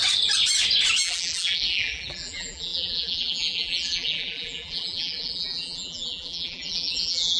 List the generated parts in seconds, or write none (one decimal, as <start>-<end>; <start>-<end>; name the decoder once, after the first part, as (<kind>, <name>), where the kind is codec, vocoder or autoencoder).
1.0-7.4 (vocoder, BigVGAN v2)